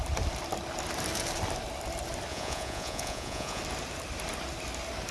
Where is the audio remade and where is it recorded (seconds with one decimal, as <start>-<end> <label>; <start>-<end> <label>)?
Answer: 0.0-2.3 recorded; 2.3-3.6 remade; 3.6-5.1 recorded